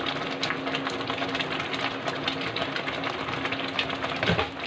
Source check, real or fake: real